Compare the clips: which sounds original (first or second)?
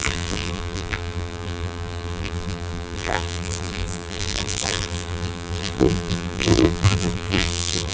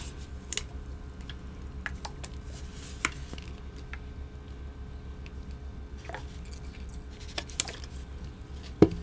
second